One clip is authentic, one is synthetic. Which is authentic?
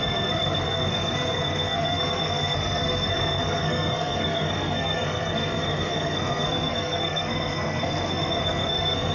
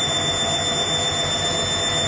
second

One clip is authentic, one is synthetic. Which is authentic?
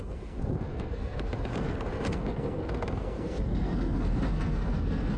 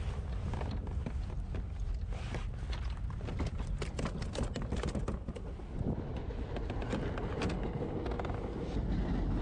second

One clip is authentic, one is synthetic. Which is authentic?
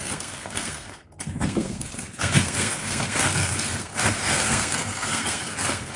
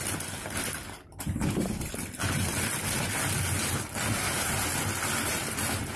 second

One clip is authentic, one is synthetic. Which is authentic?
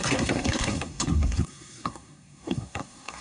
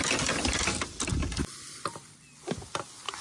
second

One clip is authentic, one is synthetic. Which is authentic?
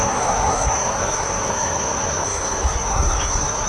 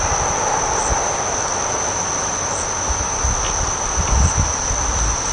second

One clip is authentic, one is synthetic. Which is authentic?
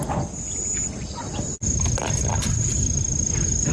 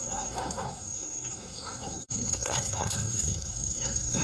first